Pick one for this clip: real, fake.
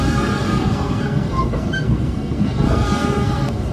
fake